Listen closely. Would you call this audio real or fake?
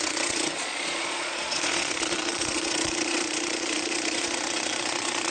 fake